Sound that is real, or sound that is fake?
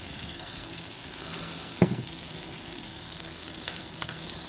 fake